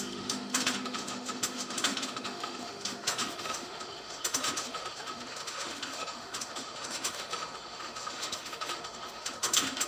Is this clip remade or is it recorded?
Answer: remade